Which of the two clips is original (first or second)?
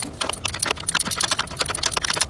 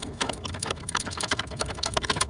first